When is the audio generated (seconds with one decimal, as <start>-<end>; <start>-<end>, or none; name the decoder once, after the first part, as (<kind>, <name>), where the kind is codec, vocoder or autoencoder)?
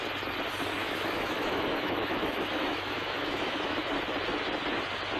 0.8-3.9 (autoencoder, DAC-VAE)